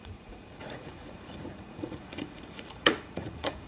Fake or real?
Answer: fake